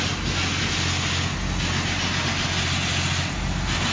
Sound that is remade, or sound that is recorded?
recorded